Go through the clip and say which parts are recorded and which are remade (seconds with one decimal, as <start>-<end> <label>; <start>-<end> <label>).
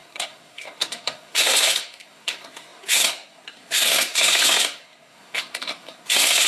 0.0-6.5 remade